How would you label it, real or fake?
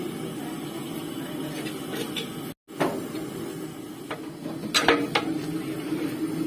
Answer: real